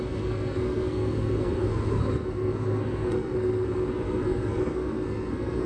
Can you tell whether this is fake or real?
fake